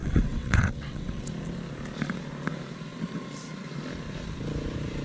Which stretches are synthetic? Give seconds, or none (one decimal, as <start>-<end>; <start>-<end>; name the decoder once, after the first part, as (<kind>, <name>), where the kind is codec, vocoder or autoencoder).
0.0-1.3 (vocoder, WaveNeXt)